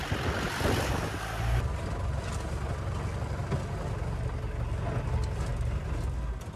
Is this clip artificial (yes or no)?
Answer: no